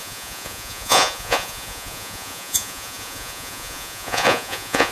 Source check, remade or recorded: remade